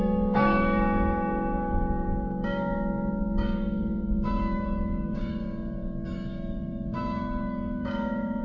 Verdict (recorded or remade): remade